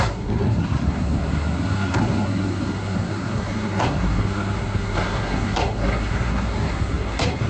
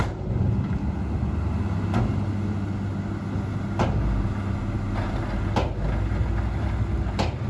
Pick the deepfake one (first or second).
first